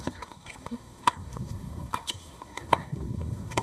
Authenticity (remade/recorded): remade